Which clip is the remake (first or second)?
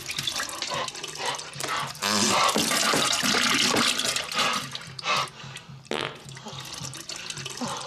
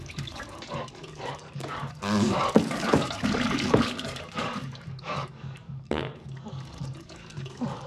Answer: second